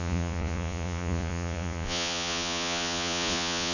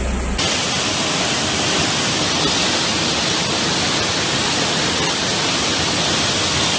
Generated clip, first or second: first